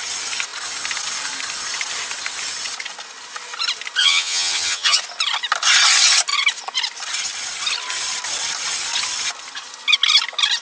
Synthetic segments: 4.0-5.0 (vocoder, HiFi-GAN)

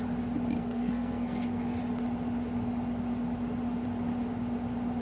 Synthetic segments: 0.6-1.8 (codec, SNAC)